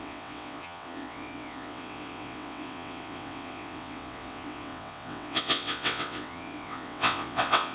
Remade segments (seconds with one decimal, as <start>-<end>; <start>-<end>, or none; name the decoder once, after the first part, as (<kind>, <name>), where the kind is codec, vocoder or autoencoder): 0.0-7.7 (vocoder, WaveNeXt)

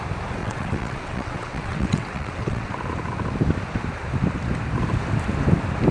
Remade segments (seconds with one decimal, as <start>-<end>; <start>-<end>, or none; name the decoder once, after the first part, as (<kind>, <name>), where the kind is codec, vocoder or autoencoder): 0.4-2.7 (vocoder, WaveNeXt)